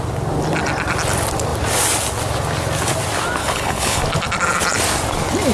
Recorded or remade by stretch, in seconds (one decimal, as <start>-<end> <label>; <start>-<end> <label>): 0.0-3.4 recorded; 3.4-4.0 remade; 4.0-5.5 recorded